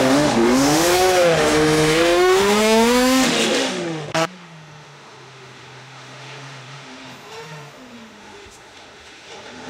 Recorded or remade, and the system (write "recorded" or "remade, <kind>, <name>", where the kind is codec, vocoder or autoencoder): remade, autoencoder, DAC-VAE